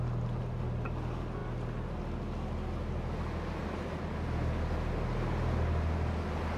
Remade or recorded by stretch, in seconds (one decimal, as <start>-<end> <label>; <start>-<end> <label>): 0.0-6.6 recorded